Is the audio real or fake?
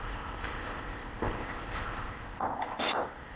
fake